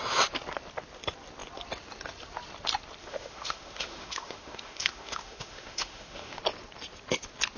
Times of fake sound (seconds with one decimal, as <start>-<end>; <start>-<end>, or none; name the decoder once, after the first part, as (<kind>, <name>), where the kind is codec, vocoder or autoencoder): 3.0-6.4 (autoencoder, DAC-VAE)